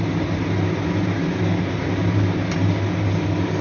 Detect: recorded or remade recorded